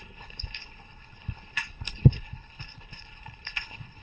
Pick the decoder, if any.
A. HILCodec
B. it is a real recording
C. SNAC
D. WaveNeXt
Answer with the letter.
A